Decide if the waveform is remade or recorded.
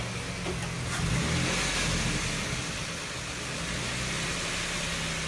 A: recorded